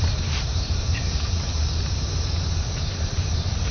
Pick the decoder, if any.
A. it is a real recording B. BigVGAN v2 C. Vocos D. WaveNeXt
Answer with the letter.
B